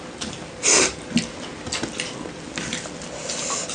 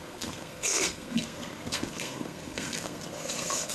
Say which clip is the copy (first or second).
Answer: second